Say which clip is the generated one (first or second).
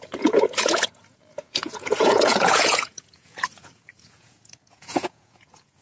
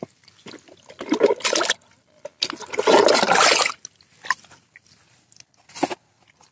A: first